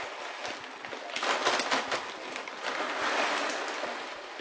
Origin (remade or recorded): recorded